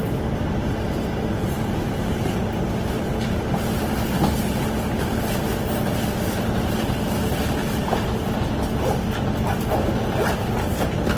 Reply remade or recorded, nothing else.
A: recorded